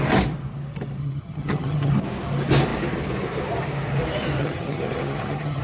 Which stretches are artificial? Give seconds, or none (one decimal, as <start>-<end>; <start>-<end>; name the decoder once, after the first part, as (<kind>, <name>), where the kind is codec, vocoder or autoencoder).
1.0-1.9 (vocoder, HiFi-GAN); 4.4-5.6